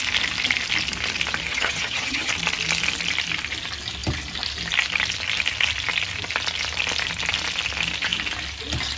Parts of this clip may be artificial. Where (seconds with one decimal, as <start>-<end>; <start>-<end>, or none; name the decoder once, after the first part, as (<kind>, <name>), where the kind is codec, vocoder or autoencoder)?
1.5-2.3 (vocoder, HiFi-GAN)